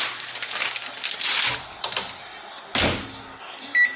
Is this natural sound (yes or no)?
yes